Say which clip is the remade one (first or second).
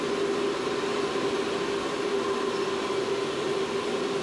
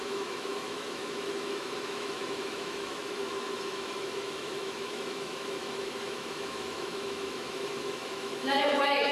second